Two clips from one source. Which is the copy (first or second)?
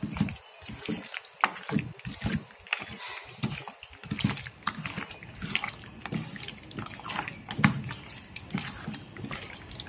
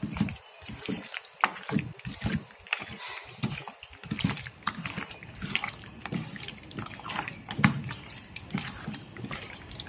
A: second